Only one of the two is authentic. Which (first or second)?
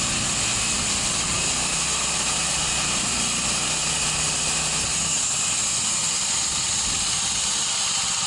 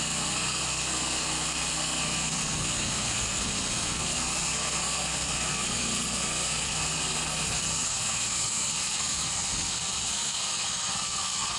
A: first